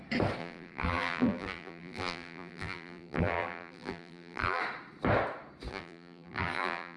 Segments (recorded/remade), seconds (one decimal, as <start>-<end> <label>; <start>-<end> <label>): 0.0-0.4 recorded; 0.4-4.6 remade; 4.6-5.7 recorded; 5.7-7.0 remade